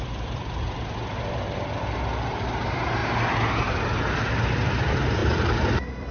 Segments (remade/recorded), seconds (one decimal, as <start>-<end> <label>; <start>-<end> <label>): 0.0-3.0 remade; 3.0-4.1 recorded; 4.1-6.1 remade